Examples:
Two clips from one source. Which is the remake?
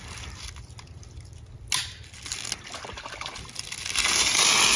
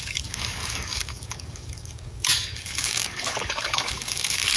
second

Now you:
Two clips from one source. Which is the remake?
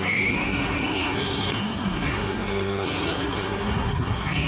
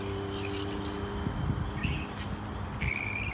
first